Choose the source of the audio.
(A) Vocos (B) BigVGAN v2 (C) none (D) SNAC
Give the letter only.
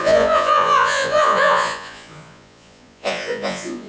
A